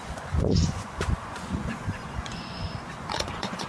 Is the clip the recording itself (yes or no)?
no